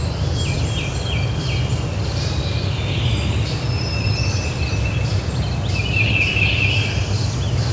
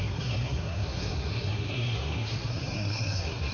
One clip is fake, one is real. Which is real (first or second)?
first